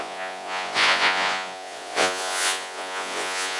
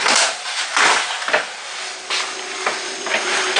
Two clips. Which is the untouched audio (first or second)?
second